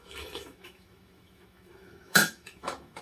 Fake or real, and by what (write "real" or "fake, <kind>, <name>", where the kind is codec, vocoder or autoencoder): fake, autoencoder, DAC-VAE